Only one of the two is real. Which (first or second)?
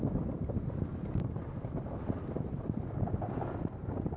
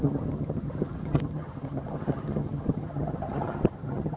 first